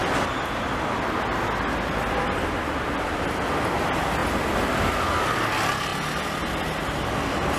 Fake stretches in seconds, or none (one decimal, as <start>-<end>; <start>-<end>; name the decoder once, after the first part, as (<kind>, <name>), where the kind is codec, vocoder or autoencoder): none